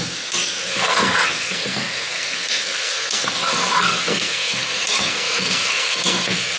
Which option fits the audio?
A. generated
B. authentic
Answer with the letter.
A